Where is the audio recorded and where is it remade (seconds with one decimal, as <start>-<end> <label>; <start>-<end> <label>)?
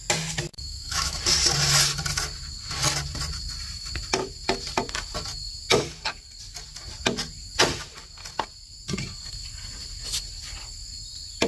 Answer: 0.0-0.5 recorded; 0.5-1.2 remade; 1.2-11.5 recorded